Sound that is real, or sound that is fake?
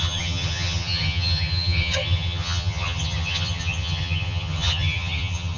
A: fake